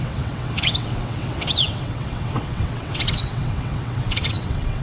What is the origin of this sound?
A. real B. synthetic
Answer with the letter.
B